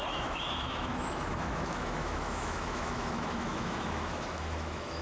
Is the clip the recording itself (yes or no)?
no